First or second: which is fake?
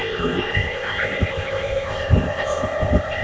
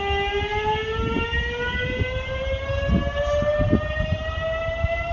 first